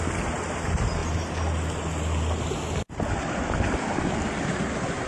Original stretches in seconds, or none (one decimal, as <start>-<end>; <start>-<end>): 0.0-5.1